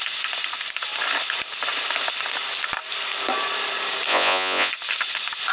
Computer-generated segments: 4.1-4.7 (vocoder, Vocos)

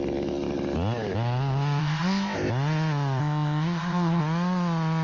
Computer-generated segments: 1.8-2.5 (codec, ZipCodec); 3.2-4.2

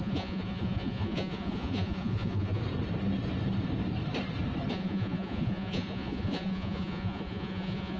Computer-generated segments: 0.0-2.6 (vocoder, Vocos); 4.7-8.0

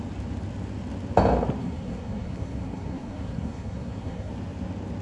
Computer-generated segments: 1.6-4.3 (codec, SNAC)